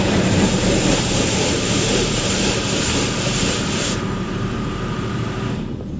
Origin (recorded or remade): remade